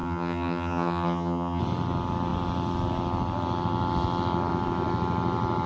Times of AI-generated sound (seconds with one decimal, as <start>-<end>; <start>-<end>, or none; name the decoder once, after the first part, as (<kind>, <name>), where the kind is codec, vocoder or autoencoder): 0.0-1.6 (vocoder, HiFi-GAN)